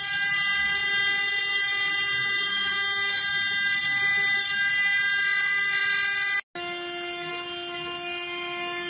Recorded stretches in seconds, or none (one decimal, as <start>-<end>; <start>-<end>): 0.0-2.5; 3.2-8.9